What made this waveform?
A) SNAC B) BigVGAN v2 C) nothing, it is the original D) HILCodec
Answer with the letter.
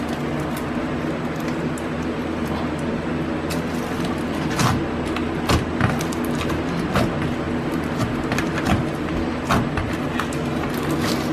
C